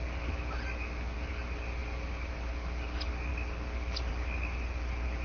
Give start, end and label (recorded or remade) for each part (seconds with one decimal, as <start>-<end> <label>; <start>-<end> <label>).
0.0-5.2 recorded